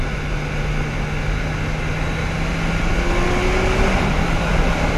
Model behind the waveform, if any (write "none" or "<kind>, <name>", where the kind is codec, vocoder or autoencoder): none